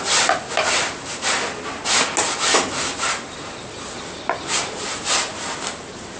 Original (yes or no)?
yes